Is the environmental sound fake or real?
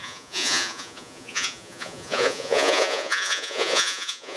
fake